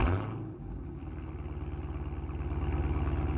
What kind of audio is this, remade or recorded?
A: recorded